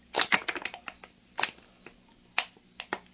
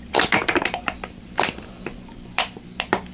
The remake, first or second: second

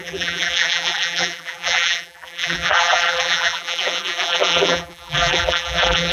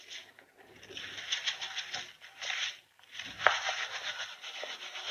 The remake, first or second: first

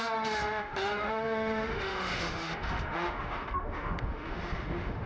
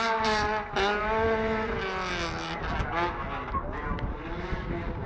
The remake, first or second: first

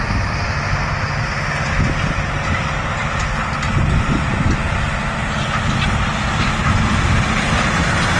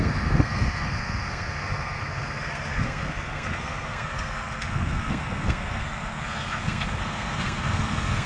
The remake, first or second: second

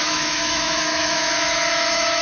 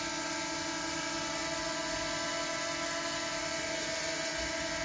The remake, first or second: first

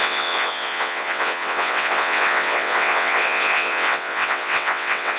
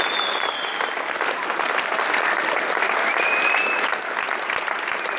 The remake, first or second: first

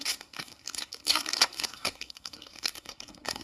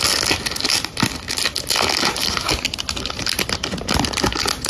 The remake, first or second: first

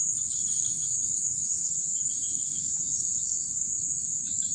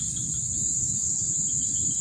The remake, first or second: first